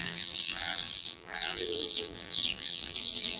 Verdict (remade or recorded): remade